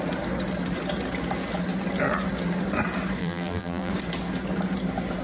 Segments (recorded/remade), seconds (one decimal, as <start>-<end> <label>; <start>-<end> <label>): 0.0-3.2 recorded; 3.2-3.9 remade; 3.9-5.2 recorded